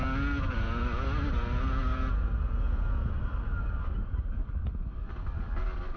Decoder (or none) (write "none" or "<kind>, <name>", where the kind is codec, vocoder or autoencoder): none